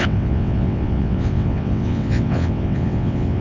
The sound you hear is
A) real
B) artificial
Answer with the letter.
B